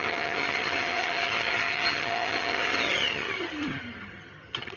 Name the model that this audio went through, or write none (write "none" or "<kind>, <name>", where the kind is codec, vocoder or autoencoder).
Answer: vocoder, HiFi-GAN